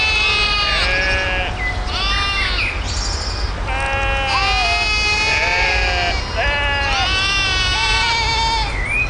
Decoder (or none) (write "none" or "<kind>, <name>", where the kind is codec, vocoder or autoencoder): none